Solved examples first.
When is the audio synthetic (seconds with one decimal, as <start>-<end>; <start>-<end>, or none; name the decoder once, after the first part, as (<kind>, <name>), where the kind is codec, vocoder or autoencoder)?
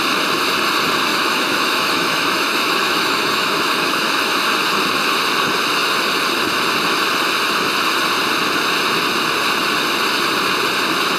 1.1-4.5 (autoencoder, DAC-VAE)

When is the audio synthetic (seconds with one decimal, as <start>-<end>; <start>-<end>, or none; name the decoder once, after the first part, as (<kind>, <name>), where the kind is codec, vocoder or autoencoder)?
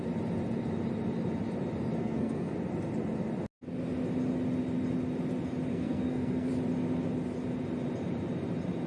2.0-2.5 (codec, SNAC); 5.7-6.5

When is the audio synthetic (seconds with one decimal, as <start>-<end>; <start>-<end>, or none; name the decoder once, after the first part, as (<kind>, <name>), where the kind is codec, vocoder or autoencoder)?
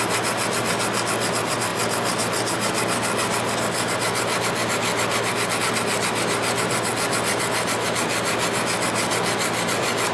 none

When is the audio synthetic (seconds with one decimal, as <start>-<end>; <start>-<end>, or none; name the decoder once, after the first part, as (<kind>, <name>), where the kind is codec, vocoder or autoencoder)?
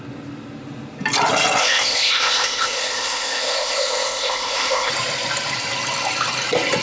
1.6-4.9 (codec, ZipCodec)